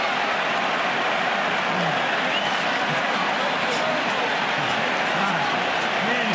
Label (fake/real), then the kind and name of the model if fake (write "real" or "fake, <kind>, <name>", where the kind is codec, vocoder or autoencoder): fake, vocoder, BigVGAN v2